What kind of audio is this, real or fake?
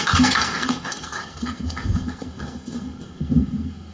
fake